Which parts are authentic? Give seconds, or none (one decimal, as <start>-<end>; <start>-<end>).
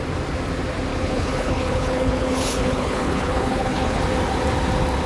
0.0-0.9; 4.0-5.1